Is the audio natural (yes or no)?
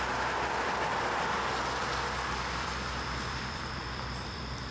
no